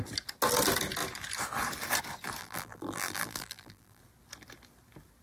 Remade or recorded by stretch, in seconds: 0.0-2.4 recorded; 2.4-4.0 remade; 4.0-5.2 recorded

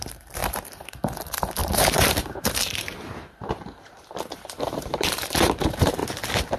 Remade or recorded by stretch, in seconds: 0.0-6.0 remade; 6.0-6.6 recorded

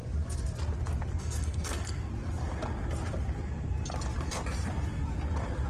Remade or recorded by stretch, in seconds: 0.0-1.2 recorded; 1.2-2.1 remade; 2.1-5.7 recorded

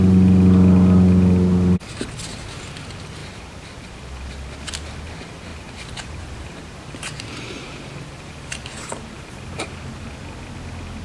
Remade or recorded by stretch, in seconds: 0.0-3.2 recorded; 3.2-4.0 remade; 4.0-5.5 recorded; 5.5-10.0 remade; 10.0-11.0 recorded

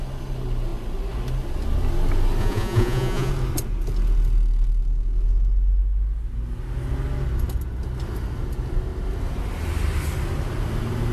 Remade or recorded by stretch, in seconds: 0.0-2.4 recorded; 2.4-3.3 remade; 3.3-11.1 recorded